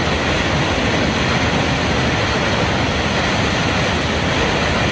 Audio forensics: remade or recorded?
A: recorded